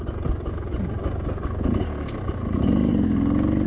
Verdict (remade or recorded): recorded